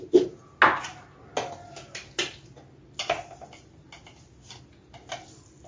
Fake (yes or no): no